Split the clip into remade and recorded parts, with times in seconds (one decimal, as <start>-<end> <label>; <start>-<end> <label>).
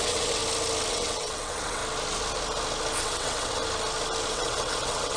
0.0-0.4 remade; 0.4-0.9 recorded; 0.9-1.8 remade; 1.8-3.0 recorded; 3.0-3.6 remade; 3.6-4.3 recorded; 4.3-5.2 remade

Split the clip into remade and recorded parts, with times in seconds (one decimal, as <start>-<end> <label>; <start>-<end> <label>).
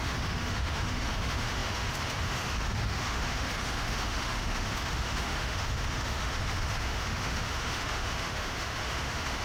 0.0-9.4 remade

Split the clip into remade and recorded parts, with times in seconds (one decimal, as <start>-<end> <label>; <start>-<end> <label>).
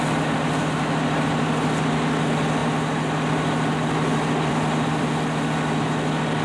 0.0-6.4 recorded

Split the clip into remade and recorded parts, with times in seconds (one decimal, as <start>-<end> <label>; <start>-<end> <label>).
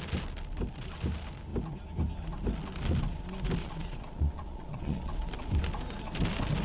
0.0-3.6 recorded; 3.6-5.3 remade; 5.3-6.6 recorded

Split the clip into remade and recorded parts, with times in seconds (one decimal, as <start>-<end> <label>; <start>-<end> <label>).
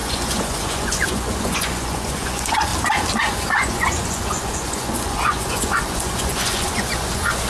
0.0-2.7 remade; 2.7-3.2 recorded; 3.2-7.5 remade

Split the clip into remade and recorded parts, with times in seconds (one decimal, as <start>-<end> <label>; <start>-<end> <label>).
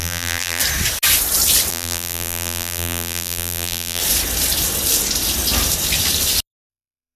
0.0-0.6 remade; 0.6-1.7 recorded; 1.7-4.0 remade; 4.0-6.7 recorded; 6.7-7.2 remade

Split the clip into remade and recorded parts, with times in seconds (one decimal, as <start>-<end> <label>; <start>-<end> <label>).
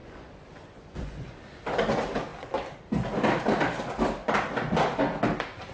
0.0-1.6 remade; 1.6-5.7 recorded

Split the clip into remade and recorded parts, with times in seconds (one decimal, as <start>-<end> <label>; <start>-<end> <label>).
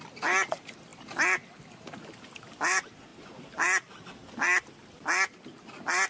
0.0-6.1 recorded